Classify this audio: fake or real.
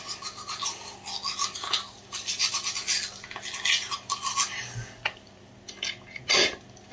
real